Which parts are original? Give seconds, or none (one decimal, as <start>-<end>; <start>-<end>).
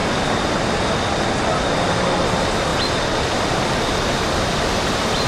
0.0-5.3